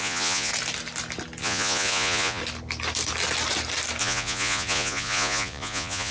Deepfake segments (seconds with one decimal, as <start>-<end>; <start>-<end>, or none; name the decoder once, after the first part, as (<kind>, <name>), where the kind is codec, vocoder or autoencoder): 0.0-0.5 (vocoder, Vocos); 1.4-2.4; 4.0-6.1